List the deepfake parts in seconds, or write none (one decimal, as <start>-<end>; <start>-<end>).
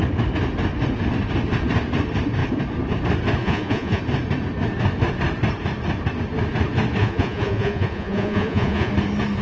3.4-4.0; 7.0-8.9